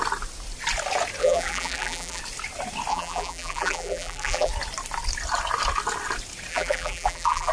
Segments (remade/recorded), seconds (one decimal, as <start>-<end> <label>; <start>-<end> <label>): 0.0-1.2 recorded; 1.2-2.2 remade; 2.2-2.9 recorded; 2.9-4.5 remade; 4.5-6.5 recorded; 6.5-7.5 remade